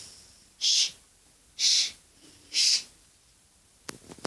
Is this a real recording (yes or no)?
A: yes